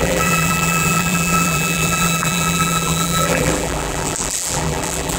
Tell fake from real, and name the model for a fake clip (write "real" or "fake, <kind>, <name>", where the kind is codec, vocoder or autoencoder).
fake, vocoder, BigVGAN v2